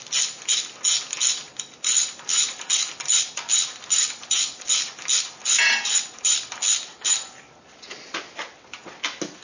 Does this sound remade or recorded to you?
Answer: recorded